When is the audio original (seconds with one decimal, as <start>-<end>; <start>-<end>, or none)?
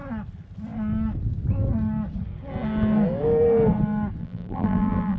0.0-4.2